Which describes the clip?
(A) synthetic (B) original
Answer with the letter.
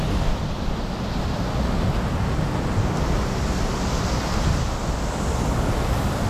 B